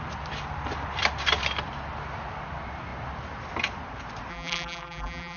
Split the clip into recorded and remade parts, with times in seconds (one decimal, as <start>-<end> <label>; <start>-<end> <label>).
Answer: 0.0-4.3 recorded; 4.3-5.4 remade